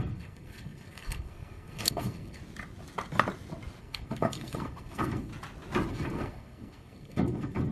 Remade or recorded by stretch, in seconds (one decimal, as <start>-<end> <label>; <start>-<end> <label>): 0.0-2.4 remade; 2.4-3.8 recorded; 3.8-5.3 remade; 5.3-5.9 recorded; 5.9-7.7 remade

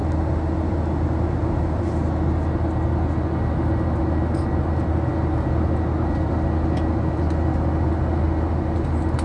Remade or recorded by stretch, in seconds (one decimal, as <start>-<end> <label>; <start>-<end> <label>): 0.0-9.2 recorded

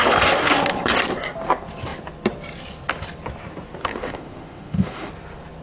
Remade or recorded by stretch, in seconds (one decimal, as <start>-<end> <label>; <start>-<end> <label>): 0.0-3.8 recorded; 3.8-5.1 remade; 5.1-5.6 recorded

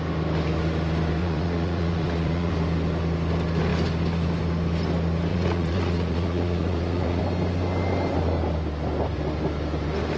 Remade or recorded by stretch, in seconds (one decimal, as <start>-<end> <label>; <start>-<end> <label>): 0.0-1.2 recorded; 1.2-2.5 remade; 2.5-5.3 recorded; 5.3-7.2 remade; 7.2-10.2 recorded

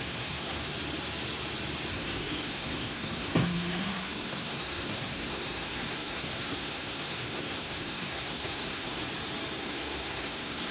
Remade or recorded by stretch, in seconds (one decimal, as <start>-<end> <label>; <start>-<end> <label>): 0.0-0.6 remade; 0.6-1.9 recorded; 1.9-9.0 remade; 9.0-9.6 recorded; 9.6-10.7 remade

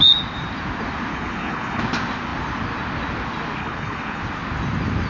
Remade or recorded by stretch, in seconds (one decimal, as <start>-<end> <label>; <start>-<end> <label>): 0.0-1.1 recorded; 1.1-1.8 remade; 1.8-3.6 recorded; 3.6-4.2 remade; 4.2-5.1 recorded